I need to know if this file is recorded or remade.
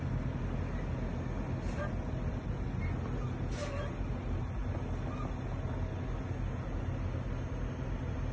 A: recorded